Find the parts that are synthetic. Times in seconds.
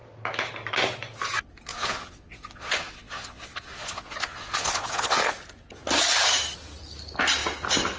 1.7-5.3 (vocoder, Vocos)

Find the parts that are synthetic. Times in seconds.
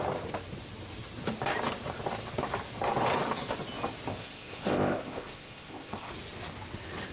4.1-6.1 (codec, ZipCodec)